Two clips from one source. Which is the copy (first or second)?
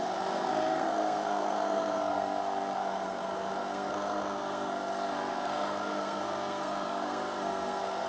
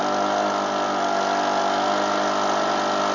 first